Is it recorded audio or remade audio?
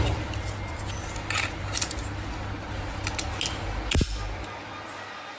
recorded